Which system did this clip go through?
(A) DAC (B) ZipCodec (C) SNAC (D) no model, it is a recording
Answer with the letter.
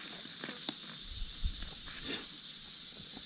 D